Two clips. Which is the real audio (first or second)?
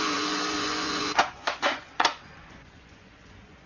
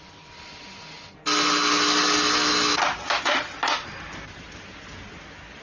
second